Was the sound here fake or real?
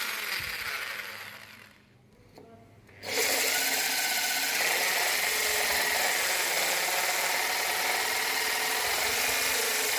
real